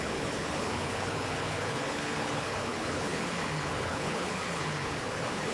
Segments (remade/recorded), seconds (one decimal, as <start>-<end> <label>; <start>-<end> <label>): 0.0-5.5 remade